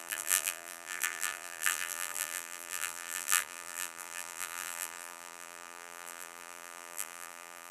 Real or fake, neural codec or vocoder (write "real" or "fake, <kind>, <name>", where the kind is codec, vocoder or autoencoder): fake, vocoder, BigVGAN v2